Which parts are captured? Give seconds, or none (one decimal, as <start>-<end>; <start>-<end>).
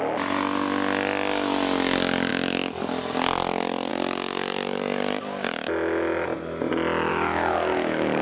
0.0-7.1